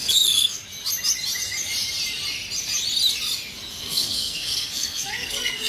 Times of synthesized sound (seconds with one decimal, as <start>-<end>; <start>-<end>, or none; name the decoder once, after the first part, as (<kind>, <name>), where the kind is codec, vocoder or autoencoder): 0.0-0.6 (codec, SNAC); 3.7-5.7